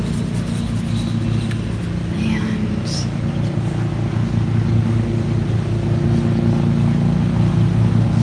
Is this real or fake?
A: real